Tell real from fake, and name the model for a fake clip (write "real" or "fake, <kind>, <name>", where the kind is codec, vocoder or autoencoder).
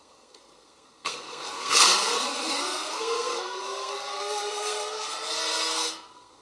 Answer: fake, codec, SNAC